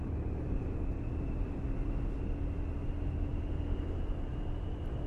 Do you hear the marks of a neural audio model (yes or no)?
no